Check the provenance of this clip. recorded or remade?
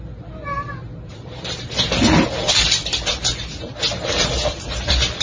recorded